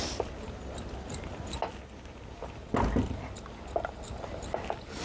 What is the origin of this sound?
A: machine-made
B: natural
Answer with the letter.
B